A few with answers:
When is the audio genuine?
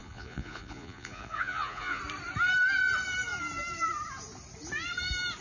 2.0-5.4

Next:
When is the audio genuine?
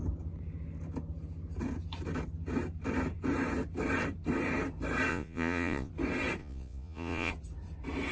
0.0-5.1; 5.9-6.4; 7.3-8.1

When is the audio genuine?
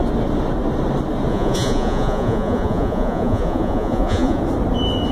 0.0-1.3; 4.4-5.1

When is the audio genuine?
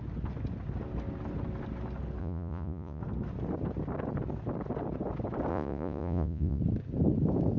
0.0-2.2; 3.0-5.5; 6.6-7.6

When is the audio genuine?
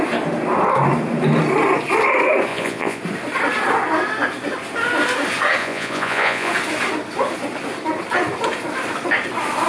0.0-2.5; 3.0-5.6; 6.5-9.7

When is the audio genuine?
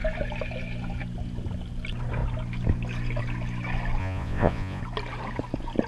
0.0-4.0; 4.8-5.9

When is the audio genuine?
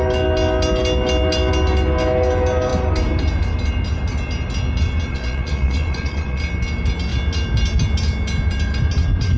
0.0-5.1; 6.4-9.4